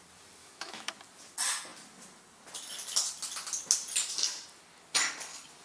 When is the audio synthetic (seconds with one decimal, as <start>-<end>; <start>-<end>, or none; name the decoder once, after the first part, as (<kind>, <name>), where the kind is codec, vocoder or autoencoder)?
0.4-0.9 (autoencoder, DAC-VAE)